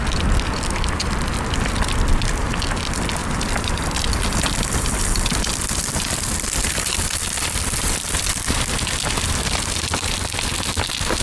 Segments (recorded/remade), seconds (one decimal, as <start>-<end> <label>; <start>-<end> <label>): 0.0-3.2 recorded; 3.2-7.2 remade; 7.2-11.2 recorded